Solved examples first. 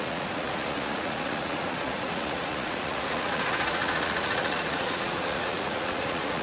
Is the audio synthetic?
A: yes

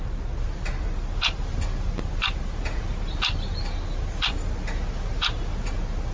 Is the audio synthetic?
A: no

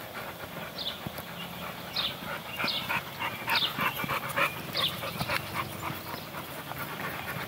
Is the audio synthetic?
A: no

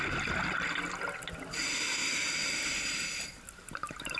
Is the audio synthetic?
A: no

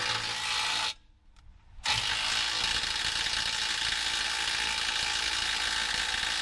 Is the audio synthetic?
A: no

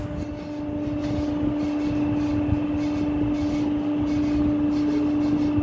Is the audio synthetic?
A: no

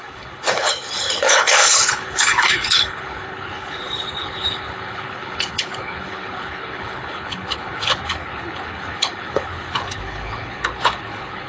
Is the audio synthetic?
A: yes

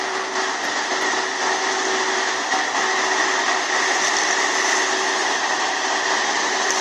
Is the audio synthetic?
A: no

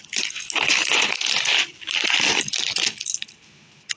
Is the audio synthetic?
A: no